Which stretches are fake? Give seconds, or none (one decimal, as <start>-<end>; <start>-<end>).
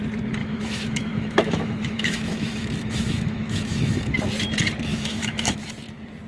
0.4-4.2; 4.9-5.7